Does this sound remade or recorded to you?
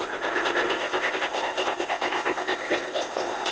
remade